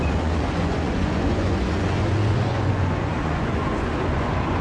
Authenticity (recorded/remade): remade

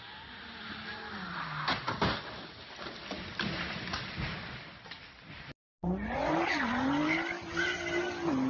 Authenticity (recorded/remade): recorded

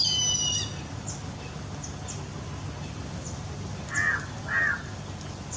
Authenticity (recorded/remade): recorded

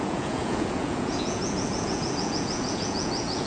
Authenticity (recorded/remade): remade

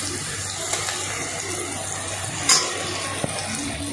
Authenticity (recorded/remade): recorded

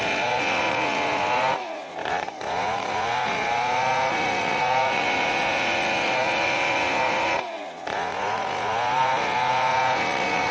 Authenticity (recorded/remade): remade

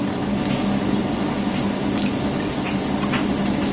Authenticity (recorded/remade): recorded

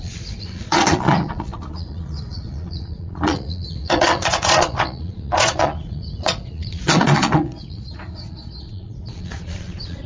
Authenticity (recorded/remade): remade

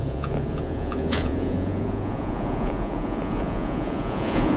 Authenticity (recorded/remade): remade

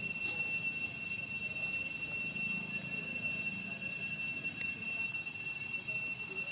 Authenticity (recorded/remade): recorded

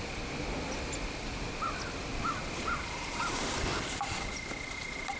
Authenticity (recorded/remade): recorded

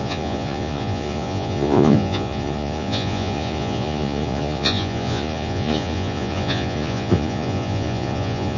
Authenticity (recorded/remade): remade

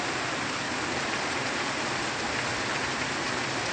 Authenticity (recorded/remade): recorded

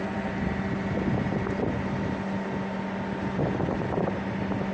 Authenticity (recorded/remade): recorded